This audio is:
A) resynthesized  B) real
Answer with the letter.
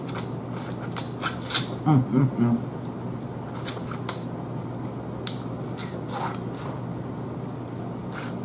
B